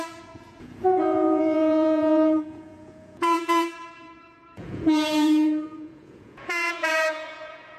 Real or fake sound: fake